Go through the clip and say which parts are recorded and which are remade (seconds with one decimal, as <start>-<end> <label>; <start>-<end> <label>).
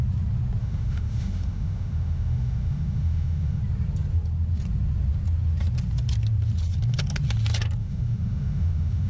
0.0-0.6 recorded; 0.6-3.6 remade; 3.6-7.8 recorded; 7.8-9.1 remade